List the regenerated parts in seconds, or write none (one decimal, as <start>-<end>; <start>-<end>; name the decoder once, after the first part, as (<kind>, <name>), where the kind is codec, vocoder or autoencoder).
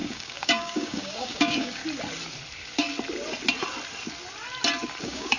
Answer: 0.0-1.8 (codec, DAC); 5.0-5.4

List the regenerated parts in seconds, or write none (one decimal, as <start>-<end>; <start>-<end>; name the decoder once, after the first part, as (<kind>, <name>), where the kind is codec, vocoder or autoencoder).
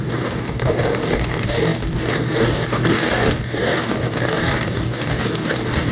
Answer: 0.0-5.9 (codec, DAC)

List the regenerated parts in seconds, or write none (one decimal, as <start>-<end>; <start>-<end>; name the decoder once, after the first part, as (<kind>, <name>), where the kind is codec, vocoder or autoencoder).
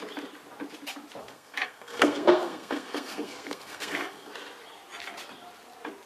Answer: 1.2-4.3 (codec, SNAC)